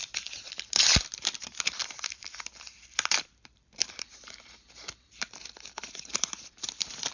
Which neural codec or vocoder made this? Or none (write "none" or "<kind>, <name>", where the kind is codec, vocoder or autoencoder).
vocoder, BigVGAN v2